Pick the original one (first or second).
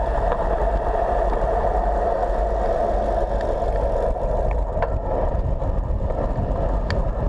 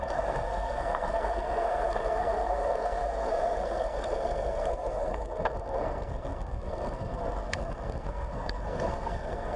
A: first